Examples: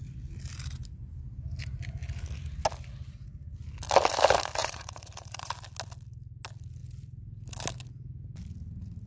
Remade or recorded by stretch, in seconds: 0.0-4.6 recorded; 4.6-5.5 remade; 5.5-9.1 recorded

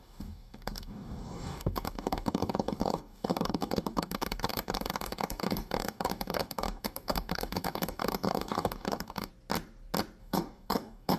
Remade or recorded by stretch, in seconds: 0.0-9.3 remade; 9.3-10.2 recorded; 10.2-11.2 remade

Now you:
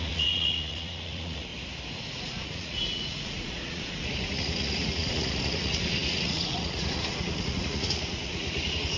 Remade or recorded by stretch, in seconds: 0.0-1.5 remade; 1.5-2.1 recorded; 2.1-9.0 remade

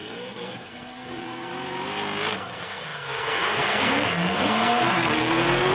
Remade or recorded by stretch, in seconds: 0.0-1.5 remade; 1.5-2.3 recorded; 2.3-5.7 remade